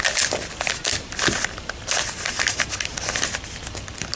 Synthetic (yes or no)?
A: no